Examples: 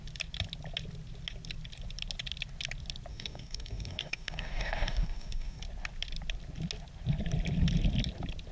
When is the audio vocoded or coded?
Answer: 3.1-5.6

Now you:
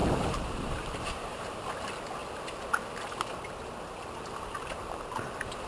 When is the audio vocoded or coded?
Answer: 0.0-1.7